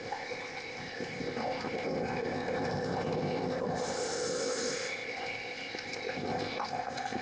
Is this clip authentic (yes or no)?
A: no